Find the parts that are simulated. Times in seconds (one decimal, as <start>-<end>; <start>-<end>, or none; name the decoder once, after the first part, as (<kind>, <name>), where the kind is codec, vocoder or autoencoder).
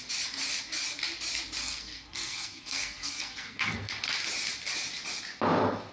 1.6-3.9 (codec, SNAC)